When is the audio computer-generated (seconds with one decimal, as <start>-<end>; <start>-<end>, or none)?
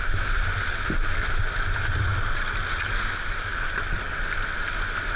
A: none